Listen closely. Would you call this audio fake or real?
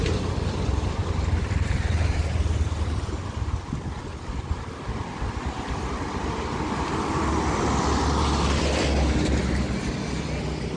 real